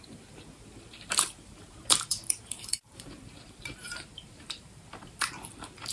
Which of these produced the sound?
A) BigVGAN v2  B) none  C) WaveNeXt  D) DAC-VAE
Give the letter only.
A